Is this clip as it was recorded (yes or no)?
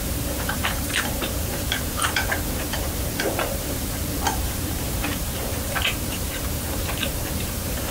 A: no